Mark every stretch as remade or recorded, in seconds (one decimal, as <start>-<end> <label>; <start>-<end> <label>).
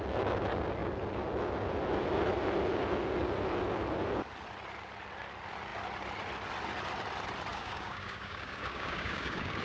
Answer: 0.0-7.5 recorded; 7.5-9.6 remade